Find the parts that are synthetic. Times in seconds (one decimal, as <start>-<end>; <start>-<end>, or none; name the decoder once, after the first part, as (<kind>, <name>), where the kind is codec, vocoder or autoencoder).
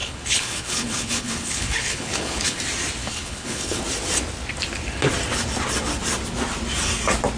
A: 0.0-2.6 (codec, HILCodec); 3.0-3.8